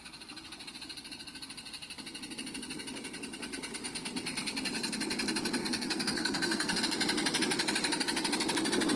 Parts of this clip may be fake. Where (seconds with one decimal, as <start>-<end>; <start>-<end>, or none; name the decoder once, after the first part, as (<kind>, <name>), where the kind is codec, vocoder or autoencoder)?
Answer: 5.6-6.8 (codec, SNAC)